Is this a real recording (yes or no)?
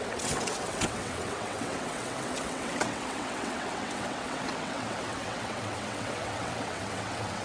no